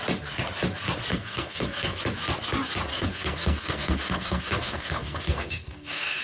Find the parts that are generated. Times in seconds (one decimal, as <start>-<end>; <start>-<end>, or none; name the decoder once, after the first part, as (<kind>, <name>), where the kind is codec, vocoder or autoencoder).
1.1-2.0 (codec, SNAC); 2.9-6.2